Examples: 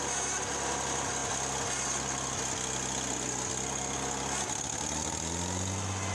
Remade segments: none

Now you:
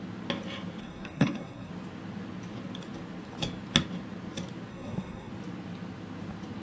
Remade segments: 0.8-1.7 (codec, SNAC); 4.7-5.3